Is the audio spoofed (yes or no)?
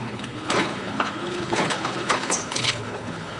yes